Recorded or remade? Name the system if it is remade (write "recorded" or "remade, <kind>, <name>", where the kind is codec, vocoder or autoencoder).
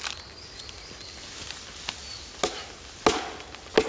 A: recorded